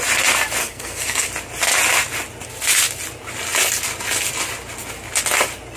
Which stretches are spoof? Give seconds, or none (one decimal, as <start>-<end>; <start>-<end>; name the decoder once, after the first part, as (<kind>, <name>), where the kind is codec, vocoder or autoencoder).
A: 0.6-1.3 (codec, SNAC)